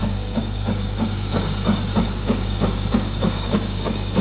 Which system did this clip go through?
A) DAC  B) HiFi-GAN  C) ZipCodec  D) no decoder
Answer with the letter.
A